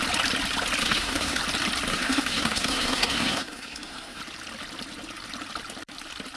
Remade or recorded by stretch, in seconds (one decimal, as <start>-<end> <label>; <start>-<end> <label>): 0.0-0.8 recorded; 0.8-1.4 remade; 1.4-1.9 recorded; 1.9-4.2 remade; 4.2-6.4 recorded